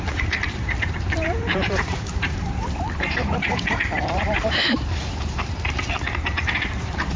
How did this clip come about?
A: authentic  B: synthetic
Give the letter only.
B